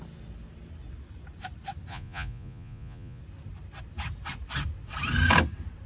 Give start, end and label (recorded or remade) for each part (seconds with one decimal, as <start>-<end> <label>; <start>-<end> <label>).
0.0-1.9 recorded; 1.9-3.2 remade; 3.2-5.9 recorded

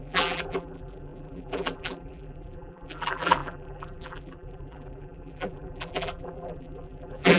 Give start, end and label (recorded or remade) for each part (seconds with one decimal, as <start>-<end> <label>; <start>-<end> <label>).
0.0-7.4 remade

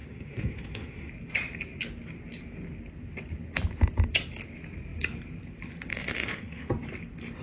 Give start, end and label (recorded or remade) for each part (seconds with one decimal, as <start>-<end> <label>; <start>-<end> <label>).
0.0-1.1 remade; 1.1-5.9 recorded; 5.9-6.7 remade; 6.7-7.4 recorded

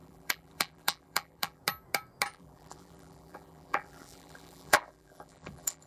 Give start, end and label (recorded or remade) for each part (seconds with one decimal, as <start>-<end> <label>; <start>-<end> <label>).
0.0-1.6 remade; 1.6-2.3 recorded; 2.3-5.9 remade

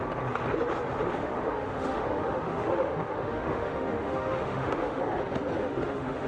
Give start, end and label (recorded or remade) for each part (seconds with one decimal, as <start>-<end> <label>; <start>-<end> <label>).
0.0-1.2 recorded; 1.2-5.0 remade; 5.0-5.6 recorded; 5.6-6.3 remade

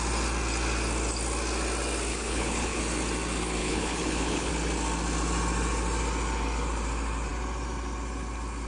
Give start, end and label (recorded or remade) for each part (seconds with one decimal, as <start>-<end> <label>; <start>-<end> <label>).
0.0-2.1 recorded; 2.1-2.8 remade; 2.8-3.6 recorded; 3.6-4.5 remade; 4.5-8.7 recorded